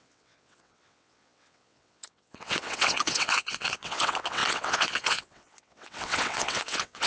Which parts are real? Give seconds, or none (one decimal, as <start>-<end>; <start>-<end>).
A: none